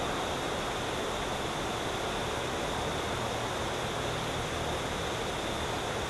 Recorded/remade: recorded